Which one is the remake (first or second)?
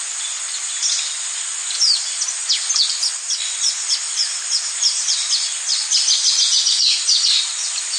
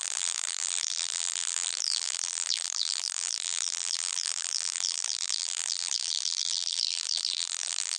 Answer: second